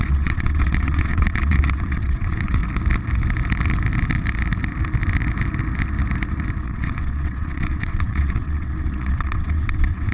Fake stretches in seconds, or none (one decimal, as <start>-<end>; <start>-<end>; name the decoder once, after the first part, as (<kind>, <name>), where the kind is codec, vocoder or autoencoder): 0.0-2.6 (vocoder, WaveNeXt); 6.6-10.1